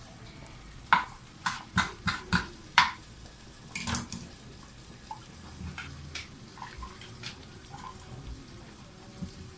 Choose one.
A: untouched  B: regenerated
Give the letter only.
B